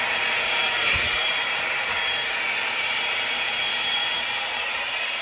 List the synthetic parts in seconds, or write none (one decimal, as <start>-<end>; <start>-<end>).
0.0-5.2